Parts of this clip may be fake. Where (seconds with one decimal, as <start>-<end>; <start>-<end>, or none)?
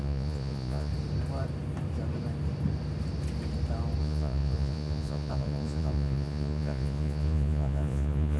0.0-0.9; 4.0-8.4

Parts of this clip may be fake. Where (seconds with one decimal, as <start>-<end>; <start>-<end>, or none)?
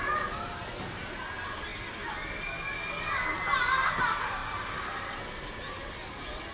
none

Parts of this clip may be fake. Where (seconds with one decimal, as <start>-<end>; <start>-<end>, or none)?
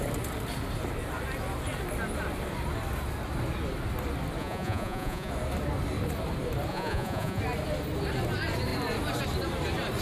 4.4-5.3; 6.7-7.4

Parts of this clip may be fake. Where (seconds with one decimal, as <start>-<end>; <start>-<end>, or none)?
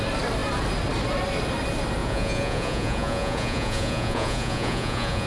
2.0-5.3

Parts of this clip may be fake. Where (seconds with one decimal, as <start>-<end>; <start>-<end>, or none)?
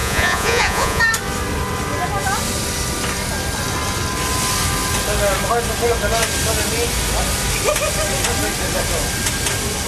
0.0-1.0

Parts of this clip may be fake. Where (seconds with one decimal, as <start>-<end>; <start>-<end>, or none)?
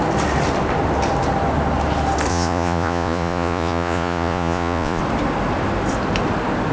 2.3-5.0